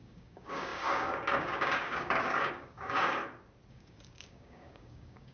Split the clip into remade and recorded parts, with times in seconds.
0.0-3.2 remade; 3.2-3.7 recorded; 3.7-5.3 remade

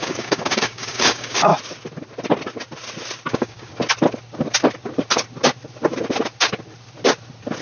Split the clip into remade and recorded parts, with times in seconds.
0.0-1.5 remade; 1.5-3.3 recorded; 3.3-3.7 remade; 3.7-7.6 recorded

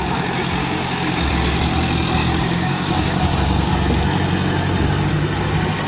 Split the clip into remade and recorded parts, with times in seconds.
0.0-0.6 recorded; 0.6-1.3 remade; 1.3-2.2 recorded; 2.2-3.7 remade; 3.7-5.9 recorded